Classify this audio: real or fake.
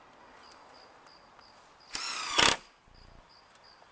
real